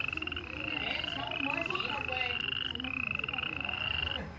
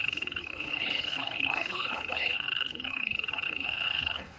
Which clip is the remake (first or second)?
second